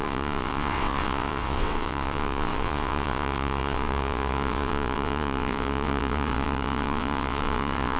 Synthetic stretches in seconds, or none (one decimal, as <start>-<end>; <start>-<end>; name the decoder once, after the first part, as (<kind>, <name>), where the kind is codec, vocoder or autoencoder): 0.0-8.0 (vocoder, WaveNeXt)